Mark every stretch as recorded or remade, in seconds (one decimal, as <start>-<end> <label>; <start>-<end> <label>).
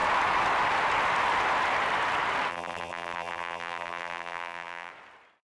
0.0-2.5 recorded; 2.5-4.9 remade; 4.9-5.6 recorded